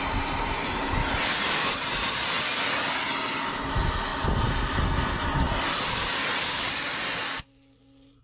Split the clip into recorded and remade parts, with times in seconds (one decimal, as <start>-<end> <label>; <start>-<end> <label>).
0.0-8.2 recorded